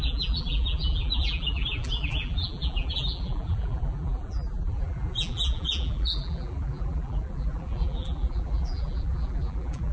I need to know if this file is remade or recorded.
remade